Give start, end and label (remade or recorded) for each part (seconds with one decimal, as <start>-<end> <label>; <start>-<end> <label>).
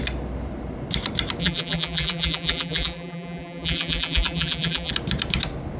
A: 0.0-1.4 recorded; 1.4-4.9 remade; 4.9-5.8 recorded